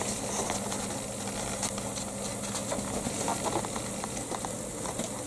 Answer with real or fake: real